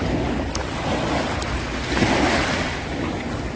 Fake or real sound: real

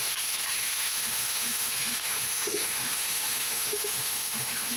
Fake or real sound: fake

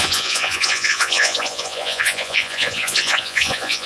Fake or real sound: fake